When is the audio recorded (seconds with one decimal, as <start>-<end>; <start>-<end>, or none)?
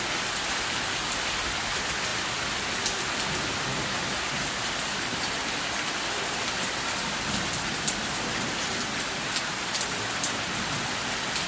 0.0-11.5